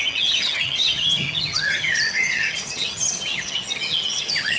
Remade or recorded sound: remade